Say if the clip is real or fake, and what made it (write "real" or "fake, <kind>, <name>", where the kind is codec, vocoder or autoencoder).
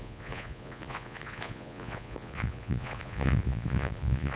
fake, vocoder, Vocos